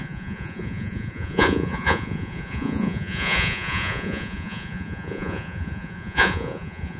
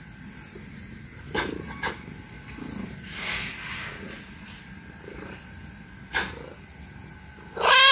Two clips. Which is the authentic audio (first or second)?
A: second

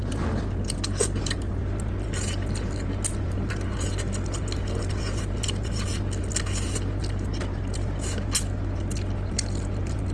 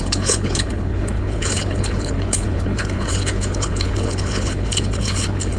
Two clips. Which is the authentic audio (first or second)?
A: first